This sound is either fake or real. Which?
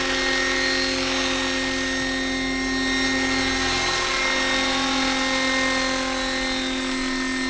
real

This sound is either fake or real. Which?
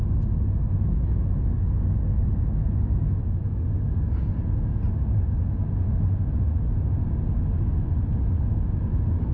real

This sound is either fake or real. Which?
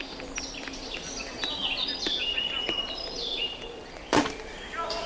fake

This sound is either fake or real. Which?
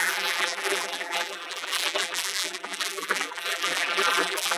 fake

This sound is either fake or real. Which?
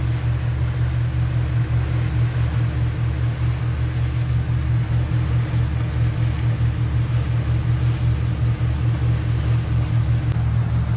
real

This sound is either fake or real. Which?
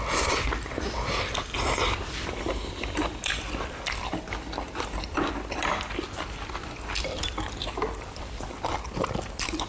fake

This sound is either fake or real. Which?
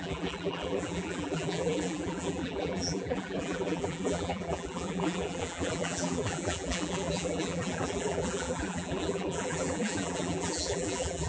fake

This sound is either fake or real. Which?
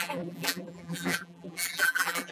fake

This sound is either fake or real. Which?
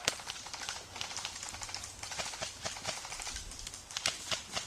fake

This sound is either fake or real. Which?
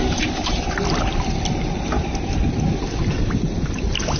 real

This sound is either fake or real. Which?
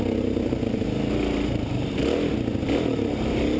real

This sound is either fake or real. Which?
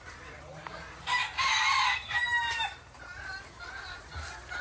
fake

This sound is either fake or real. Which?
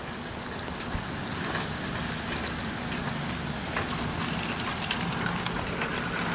real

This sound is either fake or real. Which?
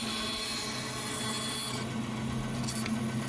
real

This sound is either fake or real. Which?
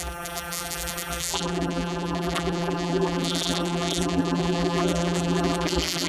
fake